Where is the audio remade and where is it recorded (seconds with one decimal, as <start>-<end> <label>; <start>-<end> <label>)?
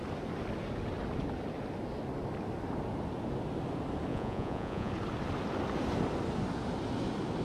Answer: 0.0-4.1 recorded; 4.1-4.9 remade; 4.9-7.4 recorded